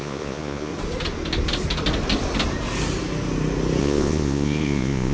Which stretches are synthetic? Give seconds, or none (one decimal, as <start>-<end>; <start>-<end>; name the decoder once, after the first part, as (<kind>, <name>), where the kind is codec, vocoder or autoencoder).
0.0-0.7 (vocoder, Vocos); 3.8-5.1